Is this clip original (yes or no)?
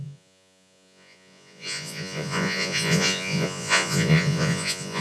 no